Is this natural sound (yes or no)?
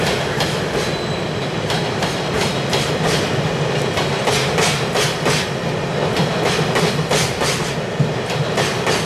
yes